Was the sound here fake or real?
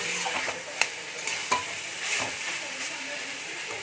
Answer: fake